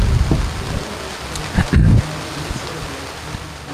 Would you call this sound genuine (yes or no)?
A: yes